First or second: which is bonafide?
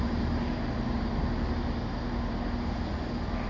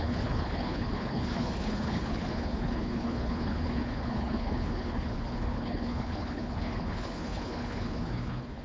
first